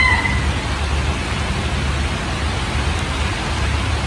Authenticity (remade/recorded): recorded